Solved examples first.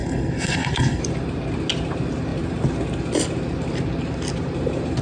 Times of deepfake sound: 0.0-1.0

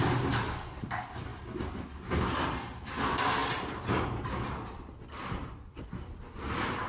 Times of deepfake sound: none

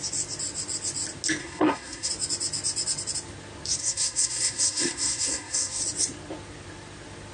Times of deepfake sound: 1.4-2.1; 3.8-5.8

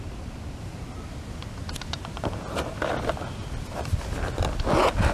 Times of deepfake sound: none

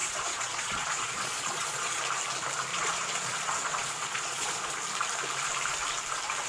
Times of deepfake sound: 0.0-2.0; 2.7-4.7

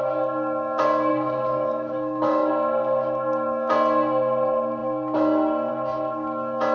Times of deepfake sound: 1.1-2.5

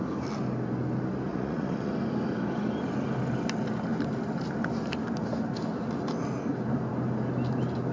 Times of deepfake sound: 1.3-1.9

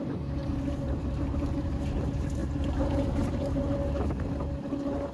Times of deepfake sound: 0.4-1.8; 2.4-3.6